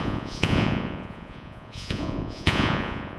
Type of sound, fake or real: fake